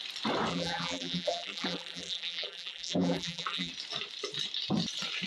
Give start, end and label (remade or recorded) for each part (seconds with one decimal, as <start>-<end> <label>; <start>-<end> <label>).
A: 0.0-0.5 recorded; 0.5-3.7 remade; 3.7-5.3 recorded